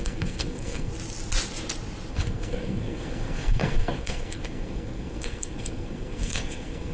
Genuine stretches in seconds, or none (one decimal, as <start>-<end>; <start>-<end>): 0.9-2.1